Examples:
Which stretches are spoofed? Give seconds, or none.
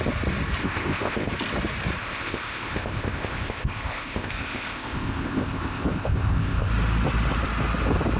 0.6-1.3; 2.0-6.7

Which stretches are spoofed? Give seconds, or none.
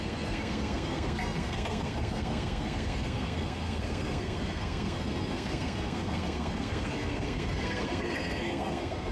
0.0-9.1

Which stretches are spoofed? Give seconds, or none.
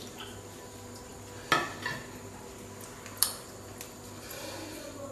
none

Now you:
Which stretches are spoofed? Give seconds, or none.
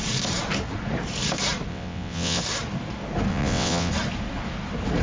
1.7-2.4; 3.3-3.9